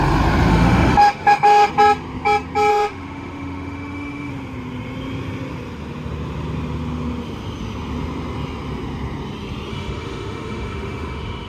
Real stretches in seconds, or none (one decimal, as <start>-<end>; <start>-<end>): 0.0-0.5; 1.7-2.7; 4.3-9.7